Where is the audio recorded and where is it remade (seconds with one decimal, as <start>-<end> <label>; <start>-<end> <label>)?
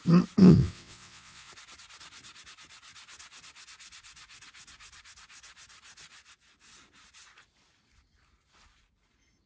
0.0-0.4 recorded; 0.4-1.5 remade; 1.5-9.5 recorded